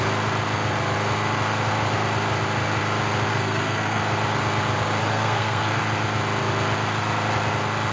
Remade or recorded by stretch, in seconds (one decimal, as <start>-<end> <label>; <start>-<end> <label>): 0.0-3.3 recorded; 3.3-4.0 remade; 4.0-5.0 recorded; 5.0-5.8 remade; 5.8-7.9 recorded